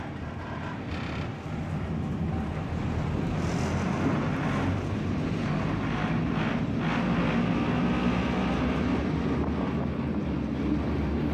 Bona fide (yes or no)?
yes